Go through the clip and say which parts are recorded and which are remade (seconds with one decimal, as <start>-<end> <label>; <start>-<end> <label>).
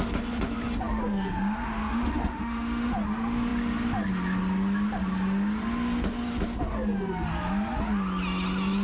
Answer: 0.0-1.0 recorded; 1.0-2.9 remade; 2.9-8.8 recorded